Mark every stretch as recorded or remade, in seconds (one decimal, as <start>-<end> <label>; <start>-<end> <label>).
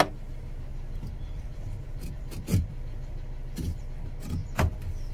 0.0-0.7 recorded; 0.7-3.8 remade; 3.8-4.4 recorded; 4.4-5.1 remade